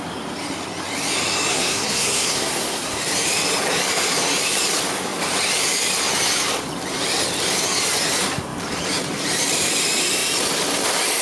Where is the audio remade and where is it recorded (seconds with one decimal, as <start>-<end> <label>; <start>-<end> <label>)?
0.0-1.5 recorded; 1.5-3.0 remade; 3.0-11.2 recorded